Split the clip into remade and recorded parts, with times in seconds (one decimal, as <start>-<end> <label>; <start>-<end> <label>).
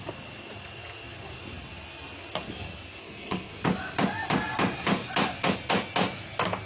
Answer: 0.0-3.0 recorded; 3.0-3.6 remade; 3.6-6.7 recorded